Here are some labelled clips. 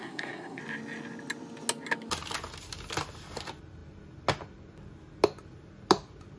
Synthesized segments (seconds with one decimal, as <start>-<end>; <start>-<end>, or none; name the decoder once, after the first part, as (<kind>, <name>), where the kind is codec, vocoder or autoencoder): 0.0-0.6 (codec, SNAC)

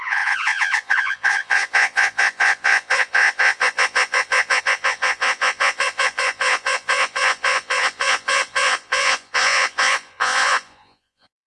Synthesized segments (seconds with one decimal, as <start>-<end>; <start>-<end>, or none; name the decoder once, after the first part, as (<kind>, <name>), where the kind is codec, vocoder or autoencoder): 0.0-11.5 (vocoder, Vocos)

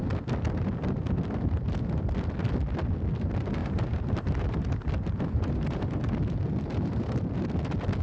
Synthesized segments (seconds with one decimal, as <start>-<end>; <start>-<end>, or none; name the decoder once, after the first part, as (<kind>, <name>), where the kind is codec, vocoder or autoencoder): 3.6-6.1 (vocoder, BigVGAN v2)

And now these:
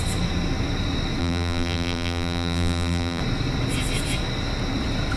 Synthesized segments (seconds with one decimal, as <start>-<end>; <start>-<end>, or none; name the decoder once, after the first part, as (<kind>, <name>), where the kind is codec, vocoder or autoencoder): 1.2-3.2 (vocoder, BigVGAN v2)

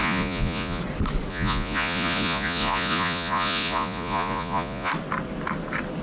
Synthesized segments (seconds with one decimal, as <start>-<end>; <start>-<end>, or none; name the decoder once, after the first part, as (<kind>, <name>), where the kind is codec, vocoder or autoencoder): 0.0-0.8 (vocoder, Vocos); 1.3-4.9

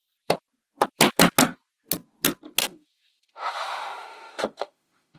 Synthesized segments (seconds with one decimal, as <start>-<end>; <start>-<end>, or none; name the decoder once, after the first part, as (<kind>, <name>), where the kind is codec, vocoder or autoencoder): 2.6-5.2 (autoencoder, DAC-VAE)